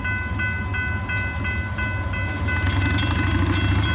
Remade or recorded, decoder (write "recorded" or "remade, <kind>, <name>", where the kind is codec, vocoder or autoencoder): recorded